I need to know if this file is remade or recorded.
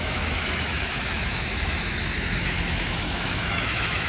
remade